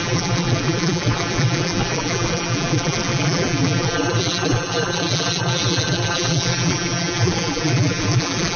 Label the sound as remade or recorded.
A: remade